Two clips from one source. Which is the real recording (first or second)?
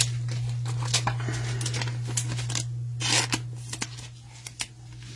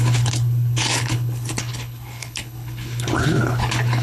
first